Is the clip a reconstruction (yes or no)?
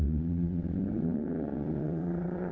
yes